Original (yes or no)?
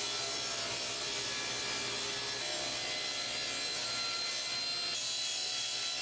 yes